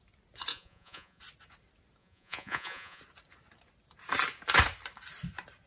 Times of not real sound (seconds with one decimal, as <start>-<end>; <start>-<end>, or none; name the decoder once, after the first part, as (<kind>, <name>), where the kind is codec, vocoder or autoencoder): 0.5-1.2 (vocoder, Vocos); 2.0-3.0